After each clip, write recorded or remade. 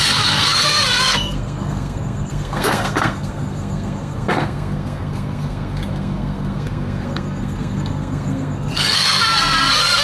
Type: remade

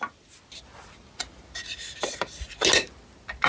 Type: recorded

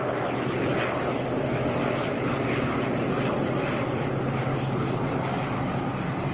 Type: recorded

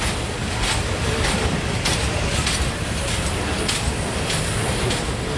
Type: recorded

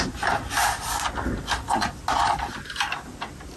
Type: recorded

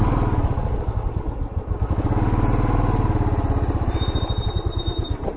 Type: recorded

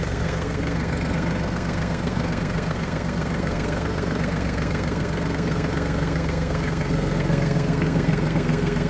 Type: remade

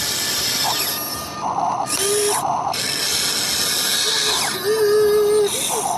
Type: recorded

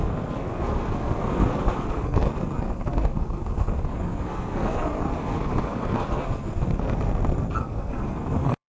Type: remade